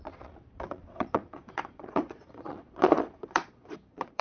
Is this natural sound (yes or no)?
no